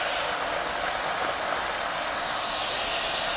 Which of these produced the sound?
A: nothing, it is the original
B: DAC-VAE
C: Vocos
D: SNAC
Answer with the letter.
A